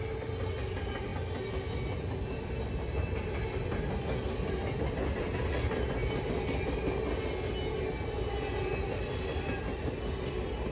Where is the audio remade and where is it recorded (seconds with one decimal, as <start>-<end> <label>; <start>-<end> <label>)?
0.0-10.7 recorded